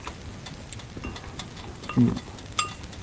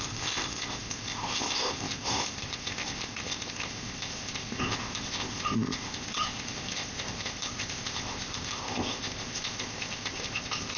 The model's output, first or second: second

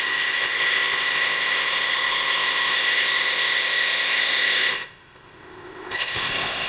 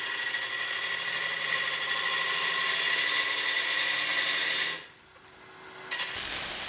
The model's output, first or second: first